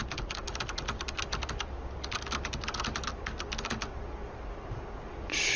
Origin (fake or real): real